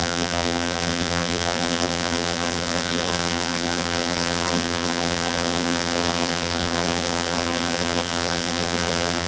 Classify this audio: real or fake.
fake